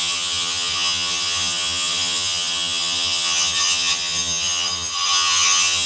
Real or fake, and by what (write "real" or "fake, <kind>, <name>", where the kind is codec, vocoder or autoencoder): fake, vocoder, HiFi-GAN